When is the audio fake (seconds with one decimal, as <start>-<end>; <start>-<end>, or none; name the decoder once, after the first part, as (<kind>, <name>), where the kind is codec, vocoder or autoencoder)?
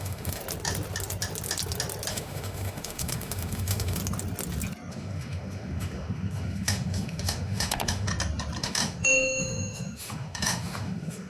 0.0-0.4 (autoencoder, DAC-VAE); 2.1-4.0; 4.9-8.1; 8.6-11.3